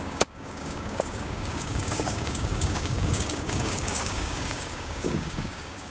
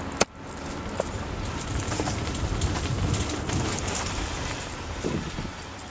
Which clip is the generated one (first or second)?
first